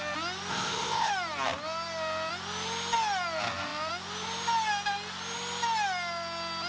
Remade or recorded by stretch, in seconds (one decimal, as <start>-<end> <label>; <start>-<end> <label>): 0.0-0.5 recorded; 0.5-1.1 remade; 1.1-6.7 recorded